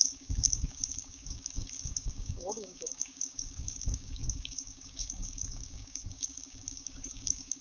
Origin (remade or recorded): remade